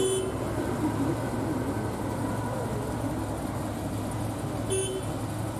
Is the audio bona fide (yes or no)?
yes